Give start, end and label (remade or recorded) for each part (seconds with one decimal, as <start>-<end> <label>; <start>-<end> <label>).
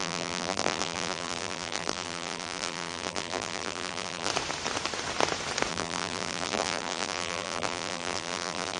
0.0-4.3 remade; 4.3-5.7 recorded; 5.7-8.8 remade